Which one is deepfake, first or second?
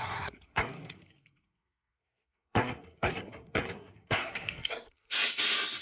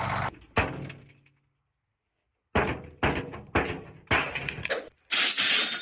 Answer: first